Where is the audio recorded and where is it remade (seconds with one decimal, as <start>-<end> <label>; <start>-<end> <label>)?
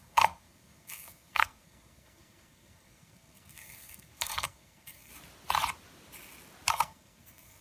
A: 0.0-5.1 remade; 5.1-6.7 recorded; 6.7-7.6 remade